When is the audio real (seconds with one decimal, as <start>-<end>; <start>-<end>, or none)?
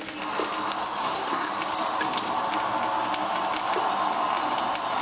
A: 0.0-1.0; 1.5-5.0